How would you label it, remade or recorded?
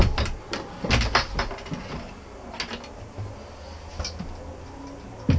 recorded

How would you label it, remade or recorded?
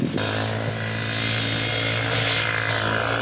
recorded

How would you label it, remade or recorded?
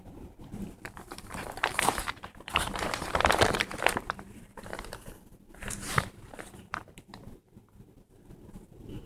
remade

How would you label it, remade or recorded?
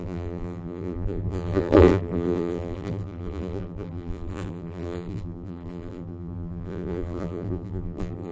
remade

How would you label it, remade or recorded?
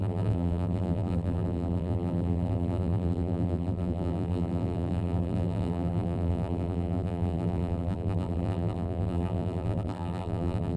remade